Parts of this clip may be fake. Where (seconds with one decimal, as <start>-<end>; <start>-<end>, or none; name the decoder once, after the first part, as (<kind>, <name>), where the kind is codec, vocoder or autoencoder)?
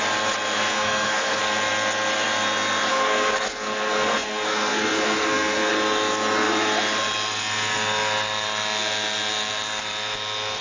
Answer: 0.7-1.4 (codec, SNAC); 2.9-5.7